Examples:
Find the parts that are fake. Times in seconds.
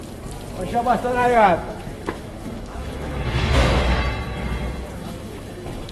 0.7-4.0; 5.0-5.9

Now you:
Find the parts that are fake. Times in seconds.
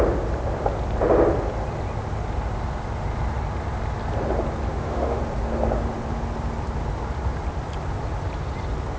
4.7-5.2